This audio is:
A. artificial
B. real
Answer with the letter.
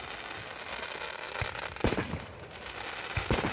B